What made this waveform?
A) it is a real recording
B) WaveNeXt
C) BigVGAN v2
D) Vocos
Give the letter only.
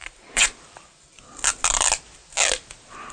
A